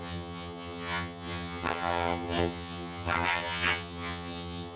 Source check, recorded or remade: remade